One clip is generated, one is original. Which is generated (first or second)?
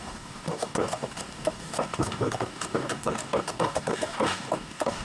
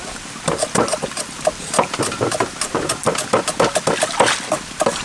first